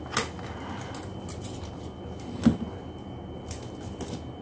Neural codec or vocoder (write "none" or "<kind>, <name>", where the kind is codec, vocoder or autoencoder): none